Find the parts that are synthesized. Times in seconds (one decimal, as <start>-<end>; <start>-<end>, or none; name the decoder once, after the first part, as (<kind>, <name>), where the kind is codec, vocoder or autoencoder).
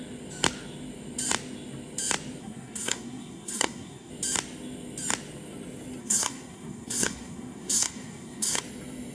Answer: 2.4-4.1 (codec, SNAC); 6.0-8.6